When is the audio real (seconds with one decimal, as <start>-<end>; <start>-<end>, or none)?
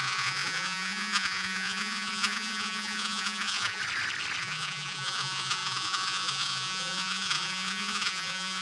3.8-4.4